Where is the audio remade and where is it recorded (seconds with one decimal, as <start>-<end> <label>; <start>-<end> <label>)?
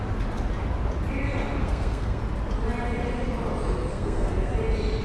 0.0-1.6 recorded; 1.6-2.2 remade; 2.2-3.9 recorded; 3.9-4.5 remade; 4.5-5.0 recorded